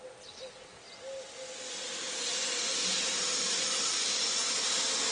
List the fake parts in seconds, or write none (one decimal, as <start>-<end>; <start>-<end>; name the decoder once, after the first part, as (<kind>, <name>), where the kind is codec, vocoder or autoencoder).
none